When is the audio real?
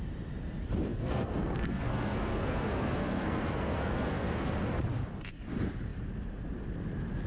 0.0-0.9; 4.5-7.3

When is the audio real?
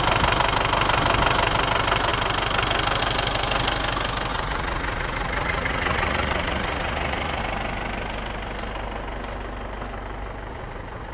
0.0-4.3; 7.4-10.5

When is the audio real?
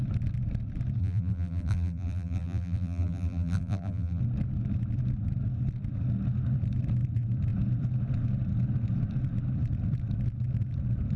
0.0-1.0; 4.2-11.2